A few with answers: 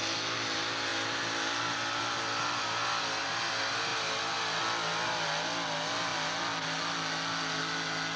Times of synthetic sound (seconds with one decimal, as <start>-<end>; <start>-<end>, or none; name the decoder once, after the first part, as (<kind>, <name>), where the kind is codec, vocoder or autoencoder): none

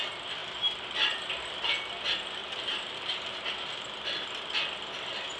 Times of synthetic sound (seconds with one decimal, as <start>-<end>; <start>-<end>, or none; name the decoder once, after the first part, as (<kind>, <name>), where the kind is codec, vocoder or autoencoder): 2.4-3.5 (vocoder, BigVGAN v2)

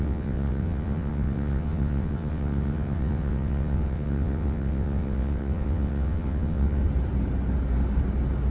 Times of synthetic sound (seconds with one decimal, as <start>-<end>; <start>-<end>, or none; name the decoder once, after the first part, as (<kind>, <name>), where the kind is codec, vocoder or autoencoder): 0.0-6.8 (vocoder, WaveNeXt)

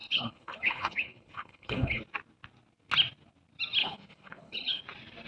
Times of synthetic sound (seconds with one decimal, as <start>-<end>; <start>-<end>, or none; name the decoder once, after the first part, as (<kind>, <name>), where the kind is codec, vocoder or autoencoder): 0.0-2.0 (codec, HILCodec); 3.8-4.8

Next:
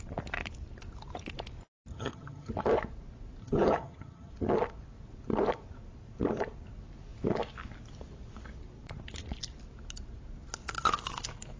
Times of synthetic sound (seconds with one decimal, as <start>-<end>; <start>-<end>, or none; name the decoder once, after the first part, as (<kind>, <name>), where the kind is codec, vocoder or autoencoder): 1.9-2.5 (vocoder, HiFi-GAN); 3.4-4.3